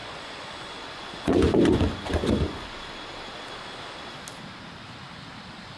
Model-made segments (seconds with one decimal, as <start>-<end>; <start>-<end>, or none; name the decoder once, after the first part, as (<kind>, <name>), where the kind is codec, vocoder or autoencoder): 0.0-2.9 (vocoder, Vocos)